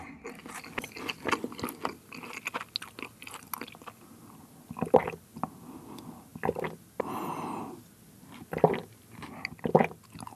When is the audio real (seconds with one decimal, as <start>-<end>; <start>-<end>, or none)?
0.0-10.4